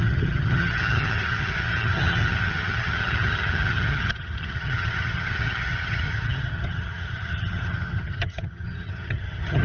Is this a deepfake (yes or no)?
yes